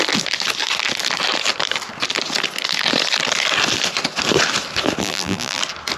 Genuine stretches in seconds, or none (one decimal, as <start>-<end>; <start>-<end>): 0.0-5.0; 5.6-6.0